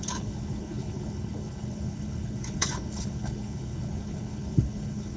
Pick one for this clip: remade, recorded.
remade